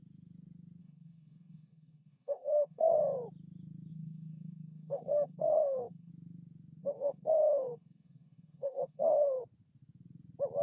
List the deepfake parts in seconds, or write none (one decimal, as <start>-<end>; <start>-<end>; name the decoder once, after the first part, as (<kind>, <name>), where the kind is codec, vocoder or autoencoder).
0.8-3.0 (codec, DAC); 3.9-6.1; 6.8-9.4